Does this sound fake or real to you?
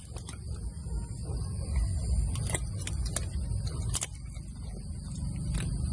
real